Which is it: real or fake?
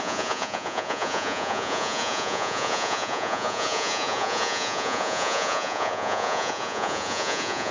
fake